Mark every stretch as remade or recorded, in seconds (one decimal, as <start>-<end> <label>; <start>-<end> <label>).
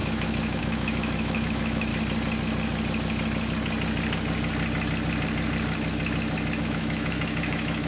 0.0-1.9 remade; 1.9-6.6 recorded; 6.6-7.9 remade